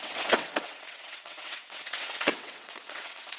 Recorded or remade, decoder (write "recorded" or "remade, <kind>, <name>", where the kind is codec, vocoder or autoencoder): remade, vocoder, WaveNeXt